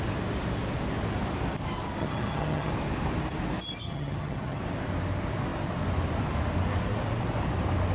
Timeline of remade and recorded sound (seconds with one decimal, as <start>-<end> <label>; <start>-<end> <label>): 0.0-2.0 recorded; 2.0-2.7 remade; 2.7-3.8 recorded; 3.8-4.6 remade; 4.6-7.9 recorded